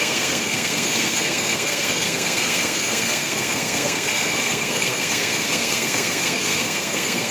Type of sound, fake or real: fake